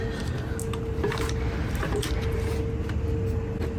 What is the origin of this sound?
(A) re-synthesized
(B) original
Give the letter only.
B